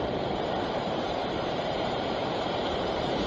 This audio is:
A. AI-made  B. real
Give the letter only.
A